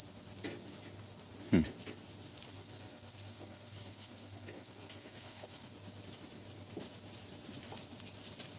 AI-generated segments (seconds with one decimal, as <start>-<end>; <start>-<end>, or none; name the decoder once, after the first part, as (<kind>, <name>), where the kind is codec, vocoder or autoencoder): 2.5-5.7 (codec, SNAC)